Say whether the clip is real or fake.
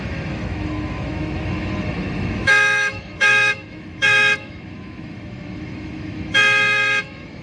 fake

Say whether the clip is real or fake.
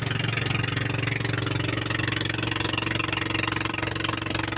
real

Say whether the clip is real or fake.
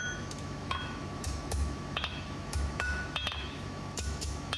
fake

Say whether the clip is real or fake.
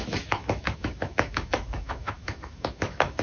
fake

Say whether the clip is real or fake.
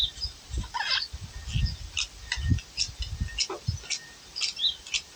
real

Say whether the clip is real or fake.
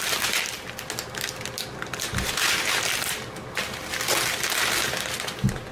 real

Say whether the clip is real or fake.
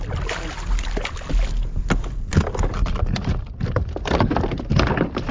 real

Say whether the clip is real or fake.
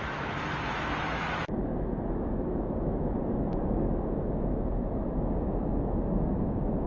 fake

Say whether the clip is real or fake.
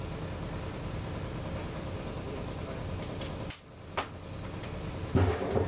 real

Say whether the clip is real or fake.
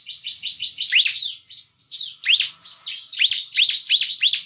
real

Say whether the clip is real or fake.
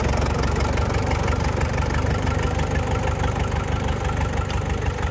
real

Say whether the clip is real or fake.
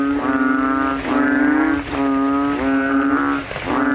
real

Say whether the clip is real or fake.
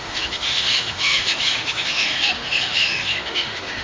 fake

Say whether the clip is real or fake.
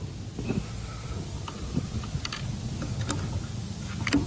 real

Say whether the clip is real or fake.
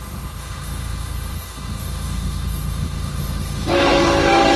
fake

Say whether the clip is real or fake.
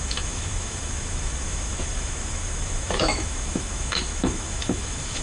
fake